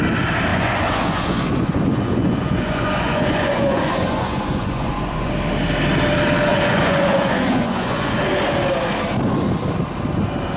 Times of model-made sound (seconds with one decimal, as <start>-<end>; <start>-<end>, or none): 0.5-5.3; 6.5-8.2